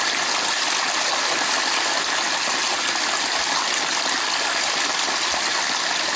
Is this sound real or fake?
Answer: real